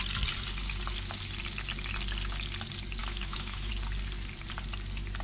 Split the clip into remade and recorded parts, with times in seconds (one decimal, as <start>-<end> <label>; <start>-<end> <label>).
0.0-3.0 recorded; 3.0-3.7 remade; 3.7-5.2 recorded